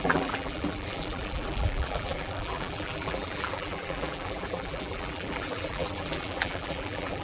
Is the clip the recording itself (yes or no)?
no